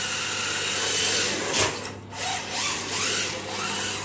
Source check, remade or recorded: recorded